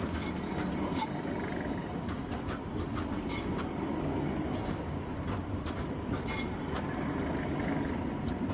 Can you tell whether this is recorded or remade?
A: recorded